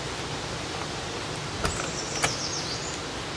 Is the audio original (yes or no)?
yes